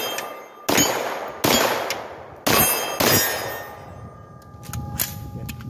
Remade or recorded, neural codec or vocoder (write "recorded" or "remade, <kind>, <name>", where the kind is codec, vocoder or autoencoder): recorded